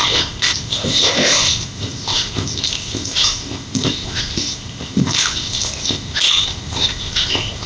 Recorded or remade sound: remade